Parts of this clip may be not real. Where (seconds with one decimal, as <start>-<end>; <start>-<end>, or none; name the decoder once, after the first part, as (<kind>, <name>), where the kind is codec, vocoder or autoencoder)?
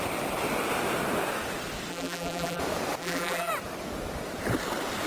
1.9-2.6 (vocoder, BigVGAN v2); 3.0-3.5